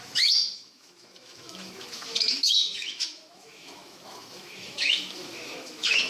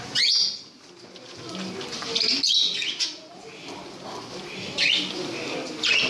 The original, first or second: second